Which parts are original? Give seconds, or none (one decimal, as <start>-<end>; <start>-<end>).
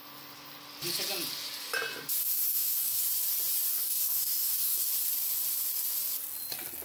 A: 0.0-2.2; 3.0-3.7; 4.9-6.8